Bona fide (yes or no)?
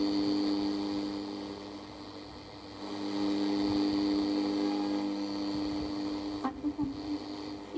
yes